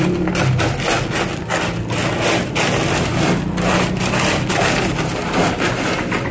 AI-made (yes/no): no